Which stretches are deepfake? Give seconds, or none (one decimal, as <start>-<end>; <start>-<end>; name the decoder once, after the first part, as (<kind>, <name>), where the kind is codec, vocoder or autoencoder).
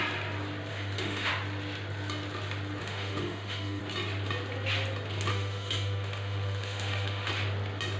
0.7-1.3 (autoencoder, DAC-VAE); 2.8-3.8; 5.3-7.3